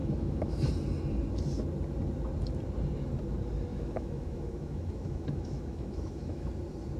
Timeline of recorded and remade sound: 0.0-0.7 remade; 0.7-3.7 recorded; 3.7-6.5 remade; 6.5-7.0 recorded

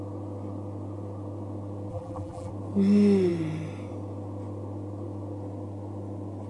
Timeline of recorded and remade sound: 0.0-1.9 recorded; 1.9-2.5 remade; 2.5-6.5 recorded

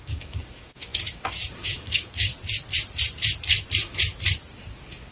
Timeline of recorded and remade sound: 0.0-2.3 remade; 2.3-4.5 recorded; 4.5-5.1 remade

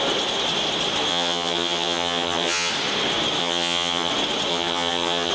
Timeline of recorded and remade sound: 0.0-1.1 recorded; 1.1-2.7 remade; 2.7-3.4 recorded; 3.4-4.1 remade; 4.1-4.5 recorded; 4.5-5.3 remade

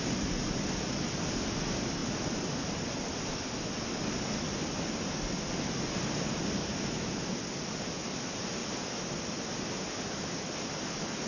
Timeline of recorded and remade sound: 0.0-6.6 recorded; 6.6-7.2 remade; 7.2-11.3 recorded

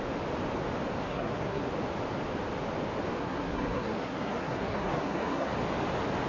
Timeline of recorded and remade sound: 0.0-1.0 recorded; 1.0-1.7 remade; 1.7-3.2 recorded; 3.2-5.5 remade; 5.5-6.3 recorded